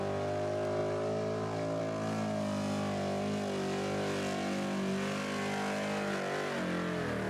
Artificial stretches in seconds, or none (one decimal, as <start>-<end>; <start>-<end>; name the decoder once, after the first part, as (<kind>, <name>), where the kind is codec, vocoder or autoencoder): none